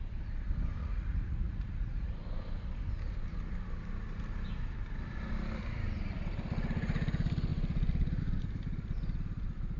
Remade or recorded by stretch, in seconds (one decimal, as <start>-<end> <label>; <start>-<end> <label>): 0.0-0.8 recorded; 0.8-2.1 remade; 2.1-9.8 recorded